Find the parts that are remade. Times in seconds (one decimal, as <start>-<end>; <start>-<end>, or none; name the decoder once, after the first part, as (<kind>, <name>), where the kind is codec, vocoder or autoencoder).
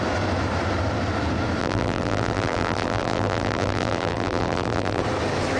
1.6-5.0 (vocoder, BigVGAN v2)